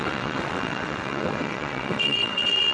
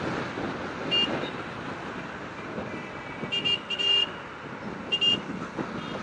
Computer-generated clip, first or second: first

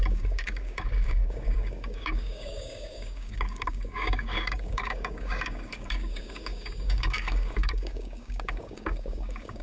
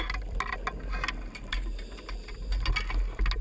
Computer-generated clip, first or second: first